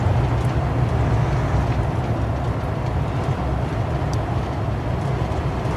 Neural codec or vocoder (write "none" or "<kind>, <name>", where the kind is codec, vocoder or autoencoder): none